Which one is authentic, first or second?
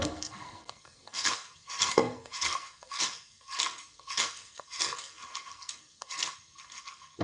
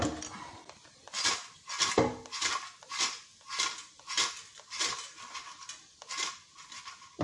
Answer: second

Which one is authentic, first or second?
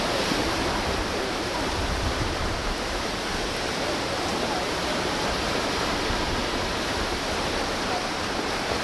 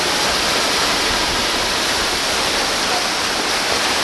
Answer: second